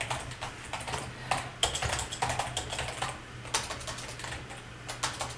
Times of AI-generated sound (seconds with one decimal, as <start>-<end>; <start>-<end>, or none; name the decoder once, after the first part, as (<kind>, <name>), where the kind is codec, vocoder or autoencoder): none